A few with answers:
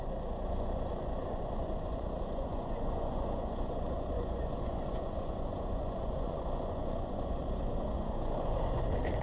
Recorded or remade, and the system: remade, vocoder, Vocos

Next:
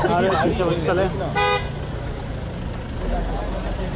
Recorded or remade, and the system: recorded